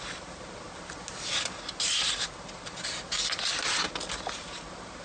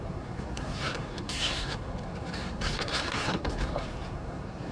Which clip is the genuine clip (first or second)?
first